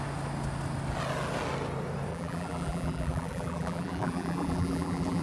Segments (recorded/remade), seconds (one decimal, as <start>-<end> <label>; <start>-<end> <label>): 0.0-2.1 recorded; 2.1-5.2 remade